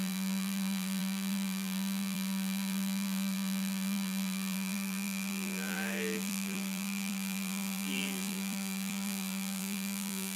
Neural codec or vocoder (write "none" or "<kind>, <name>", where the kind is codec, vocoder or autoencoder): vocoder, BigVGAN v2